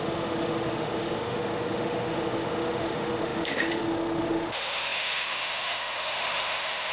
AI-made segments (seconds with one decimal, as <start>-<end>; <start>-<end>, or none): 0.0-6.9